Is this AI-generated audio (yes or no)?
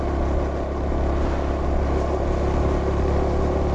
no